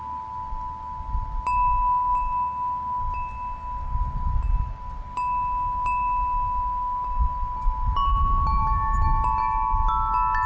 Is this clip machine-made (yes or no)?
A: no